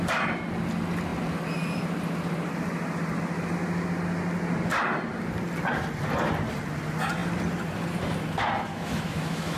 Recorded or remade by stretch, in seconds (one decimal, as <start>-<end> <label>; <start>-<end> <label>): 0.0-8.7 recorded; 8.7-9.6 remade

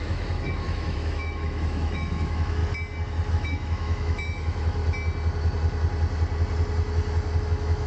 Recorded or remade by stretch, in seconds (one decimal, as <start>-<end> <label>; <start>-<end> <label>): 0.0-2.6 remade; 2.6-3.3 recorded; 3.3-4.8 remade; 4.8-7.4 recorded; 7.4-7.9 remade

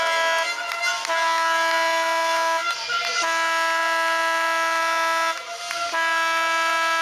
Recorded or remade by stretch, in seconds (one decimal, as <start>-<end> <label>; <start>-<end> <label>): 0.0-7.0 recorded

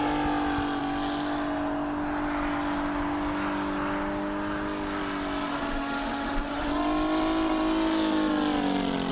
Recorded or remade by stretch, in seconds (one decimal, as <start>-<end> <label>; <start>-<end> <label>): 0.0-5.5 recorded; 5.5-6.7 remade; 6.7-9.1 recorded